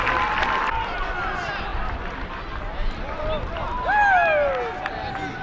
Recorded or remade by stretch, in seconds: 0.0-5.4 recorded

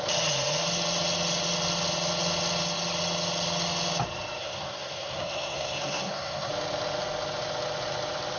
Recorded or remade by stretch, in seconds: 0.0-4.4 recorded; 4.4-6.5 remade; 6.5-8.4 recorded

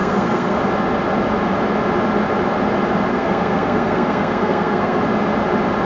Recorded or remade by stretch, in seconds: 0.0-0.6 remade; 0.6-3.1 recorded; 3.1-5.0 remade; 5.0-5.8 recorded

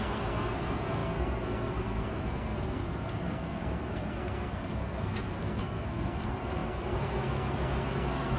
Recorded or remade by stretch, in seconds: 0.0-8.4 remade